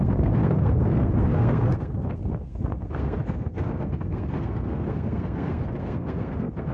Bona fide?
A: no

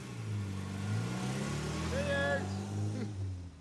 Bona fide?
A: yes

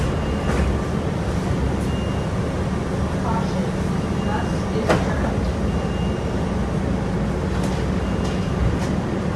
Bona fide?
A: yes